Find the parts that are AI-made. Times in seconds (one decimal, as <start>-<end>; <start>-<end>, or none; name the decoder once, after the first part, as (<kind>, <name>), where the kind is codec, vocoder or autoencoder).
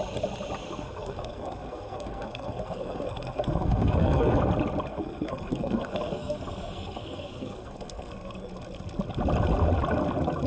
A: 0.6-4.4 (codec, SNAC); 4.9-8.5